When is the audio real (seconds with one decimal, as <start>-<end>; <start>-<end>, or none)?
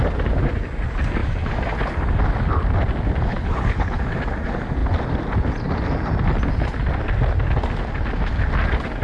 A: 0.0-3.3; 4.0-9.0